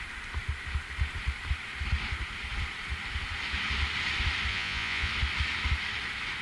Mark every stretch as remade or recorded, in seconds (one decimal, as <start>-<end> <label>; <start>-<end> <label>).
0.0-4.5 recorded; 4.5-5.1 remade; 5.1-6.4 recorded